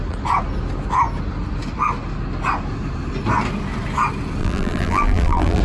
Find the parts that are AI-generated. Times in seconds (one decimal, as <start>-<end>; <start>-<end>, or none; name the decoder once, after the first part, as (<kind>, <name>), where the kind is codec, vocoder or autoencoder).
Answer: 4.4-5.6 (vocoder, BigVGAN v2)